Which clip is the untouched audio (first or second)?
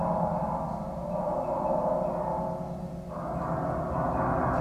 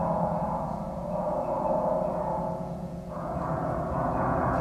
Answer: first